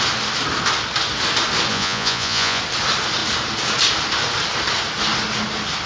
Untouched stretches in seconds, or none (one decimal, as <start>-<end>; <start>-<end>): 0.0-1.7; 2.6-5.9